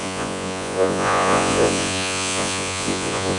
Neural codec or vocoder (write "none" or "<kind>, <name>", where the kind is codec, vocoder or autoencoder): vocoder, Vocos